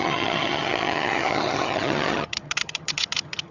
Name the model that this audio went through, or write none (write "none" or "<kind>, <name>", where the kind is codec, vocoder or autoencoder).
vocoder, HiFi-GAN